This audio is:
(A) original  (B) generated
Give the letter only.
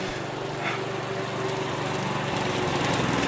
A